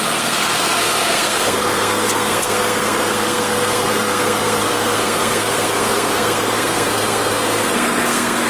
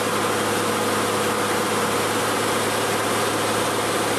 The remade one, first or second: first